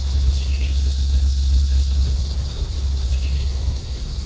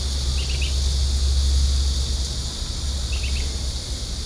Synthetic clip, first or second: first